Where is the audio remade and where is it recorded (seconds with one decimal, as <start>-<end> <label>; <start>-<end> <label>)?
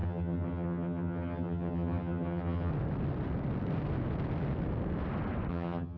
0.0-2.7 remade; 2.7-5.5 recorded; 5.5-6.0 remade